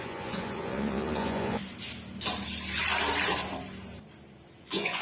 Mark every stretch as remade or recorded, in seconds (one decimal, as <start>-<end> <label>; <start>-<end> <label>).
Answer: 0.0-1.6 remade; 1.6-4.6 recorded; 4.6-5.0 remade